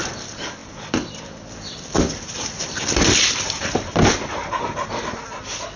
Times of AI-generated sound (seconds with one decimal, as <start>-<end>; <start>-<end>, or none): 0.6-4.1

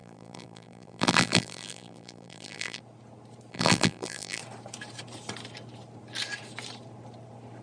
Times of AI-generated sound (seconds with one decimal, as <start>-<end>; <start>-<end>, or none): 0.0-2.8; 3.5-4.4

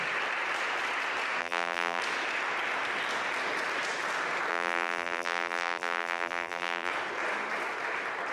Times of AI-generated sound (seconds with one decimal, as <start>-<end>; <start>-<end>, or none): 1.4-2.0; 4.5-6.9

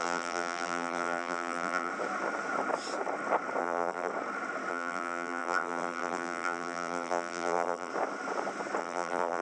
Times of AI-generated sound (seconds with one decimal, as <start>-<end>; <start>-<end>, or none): 0.0-1.9; 3.6-4.1; 4.7-7.9; 8.8-9.4

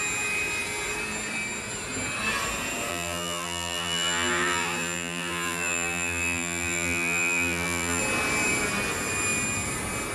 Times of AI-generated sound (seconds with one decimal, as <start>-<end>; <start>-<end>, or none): 2.9-8.0

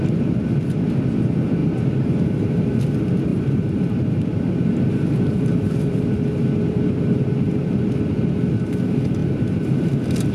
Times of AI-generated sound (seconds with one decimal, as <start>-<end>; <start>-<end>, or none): 1.6-2.8; 3.3-7.8; 9.2-9.9

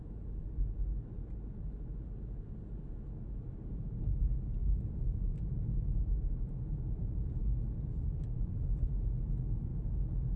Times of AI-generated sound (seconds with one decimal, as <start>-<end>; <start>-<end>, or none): none